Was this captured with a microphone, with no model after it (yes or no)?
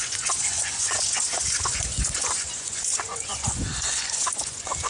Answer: no